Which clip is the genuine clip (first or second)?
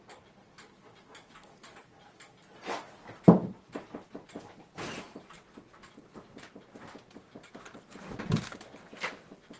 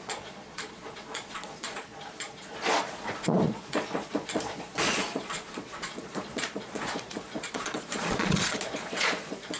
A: first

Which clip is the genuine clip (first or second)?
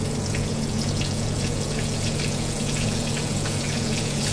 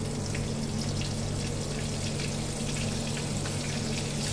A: second